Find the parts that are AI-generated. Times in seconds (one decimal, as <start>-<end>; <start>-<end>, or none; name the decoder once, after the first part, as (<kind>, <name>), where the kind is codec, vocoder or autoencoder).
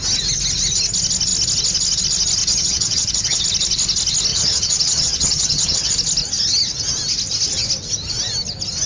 2.4-3.4 (vocoder, HiFi-GAN); 4.3-5.9